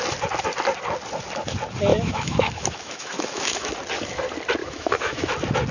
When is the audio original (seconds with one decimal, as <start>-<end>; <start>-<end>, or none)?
0.0-1.9; 3.7-4.6; 5.3-5.7